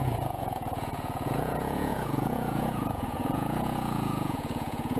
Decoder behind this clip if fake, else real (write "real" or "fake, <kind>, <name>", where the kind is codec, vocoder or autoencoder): fake, vocoder, Vocos